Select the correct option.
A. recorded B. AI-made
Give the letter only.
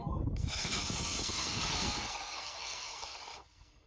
B